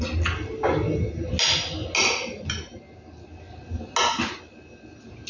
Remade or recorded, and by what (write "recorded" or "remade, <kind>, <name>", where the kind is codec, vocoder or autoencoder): recorded